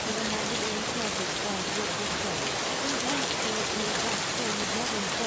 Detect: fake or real real